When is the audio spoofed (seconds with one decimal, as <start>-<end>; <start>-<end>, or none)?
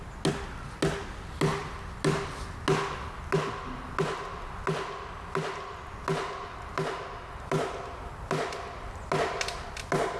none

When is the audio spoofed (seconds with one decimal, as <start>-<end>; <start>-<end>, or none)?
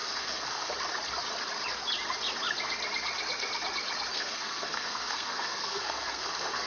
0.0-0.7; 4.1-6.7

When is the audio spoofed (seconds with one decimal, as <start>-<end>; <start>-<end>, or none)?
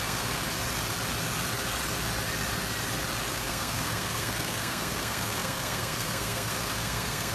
0.0-0.4; 3.3-7.3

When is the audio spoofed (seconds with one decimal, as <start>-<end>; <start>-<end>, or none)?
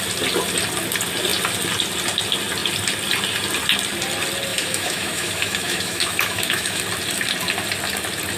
4.5-6.8